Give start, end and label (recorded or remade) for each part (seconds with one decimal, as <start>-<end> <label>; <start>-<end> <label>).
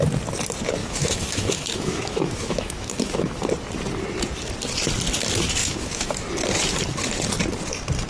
0.0-0.8 recorded; 0.8-3.4 remade; 3.4-5.6 recorded; 5.6-6.1 remade; 6.1-8.1 recorded